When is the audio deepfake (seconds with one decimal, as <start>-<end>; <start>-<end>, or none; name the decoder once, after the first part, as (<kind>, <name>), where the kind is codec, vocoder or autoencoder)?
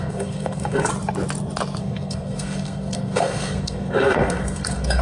0.0-0.9 (codec, SNAC); 1.8-5.0